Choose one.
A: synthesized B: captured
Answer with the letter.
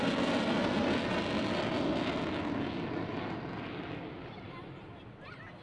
B